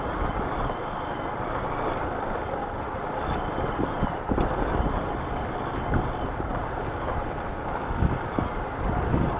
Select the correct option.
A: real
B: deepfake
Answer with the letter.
A